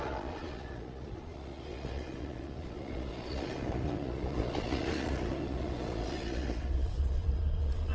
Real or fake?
fake